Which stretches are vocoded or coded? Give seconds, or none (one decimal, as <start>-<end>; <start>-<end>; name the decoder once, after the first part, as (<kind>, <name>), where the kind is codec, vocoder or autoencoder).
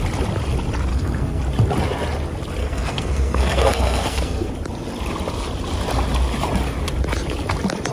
0.9-1.4 (codec, SNAC); 2.6-4.5